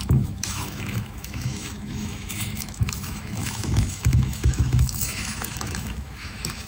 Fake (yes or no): yes